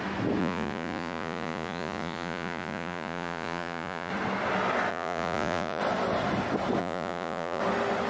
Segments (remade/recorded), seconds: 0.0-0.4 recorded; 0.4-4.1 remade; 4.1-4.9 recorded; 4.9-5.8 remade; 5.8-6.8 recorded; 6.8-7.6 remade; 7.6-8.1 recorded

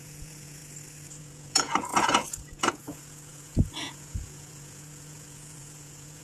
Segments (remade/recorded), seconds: 0.0-0.6 remade; 0.6-1.2 recorded; 1.2-6.2 remade

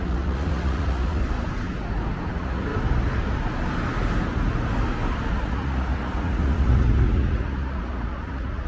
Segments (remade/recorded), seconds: 0.0-1.2 remade; 1.2-2.3 recorded; 2.3-2.7 remade; 2.7-5.3 recorded; 5.3-8.7 remade

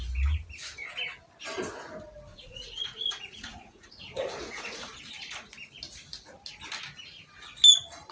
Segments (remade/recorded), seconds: 0.0-2.3 recorded; 2.3-5.0 remade; 5.0-8.1 recorded

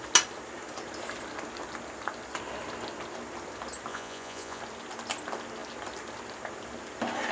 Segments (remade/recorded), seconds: 0.0-3.9 recorded; 3.9-4.6 remade; 4.6-7.3 recorded